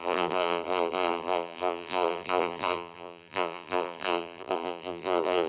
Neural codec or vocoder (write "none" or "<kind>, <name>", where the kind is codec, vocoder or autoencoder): vocoder, BigVGAN v2